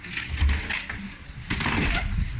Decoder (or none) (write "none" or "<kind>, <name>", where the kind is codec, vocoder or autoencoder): none